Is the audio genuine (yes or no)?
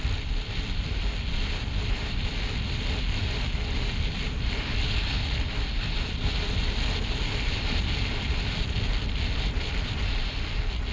yes